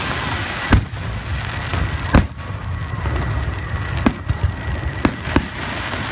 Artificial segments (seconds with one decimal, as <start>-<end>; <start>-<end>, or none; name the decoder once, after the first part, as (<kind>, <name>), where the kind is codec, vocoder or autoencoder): none